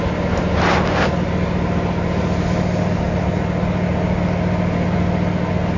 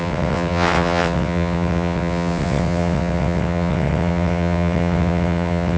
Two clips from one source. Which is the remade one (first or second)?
second